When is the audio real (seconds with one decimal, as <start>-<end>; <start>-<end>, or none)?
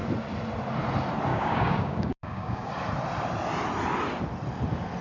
0.0-1.3; 2.7-5.0